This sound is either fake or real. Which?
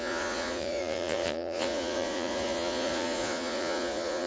fake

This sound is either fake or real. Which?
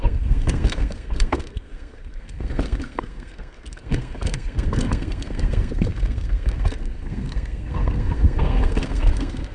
fake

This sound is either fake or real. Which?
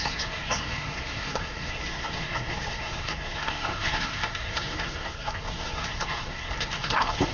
fake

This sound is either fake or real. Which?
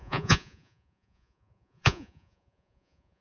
fake